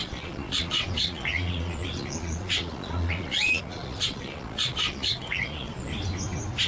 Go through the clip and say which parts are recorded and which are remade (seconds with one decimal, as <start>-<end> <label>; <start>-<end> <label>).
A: 0.0-5.9 remade; 5.9-6.7 recorded